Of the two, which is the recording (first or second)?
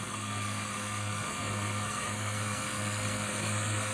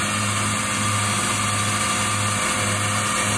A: second